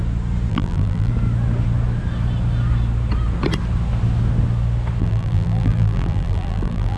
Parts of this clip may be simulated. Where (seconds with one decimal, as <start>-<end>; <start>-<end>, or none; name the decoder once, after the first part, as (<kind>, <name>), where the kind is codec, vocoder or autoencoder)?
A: 0.5-1.1 (vocoder, BigVGAN v2); 5.0-7.0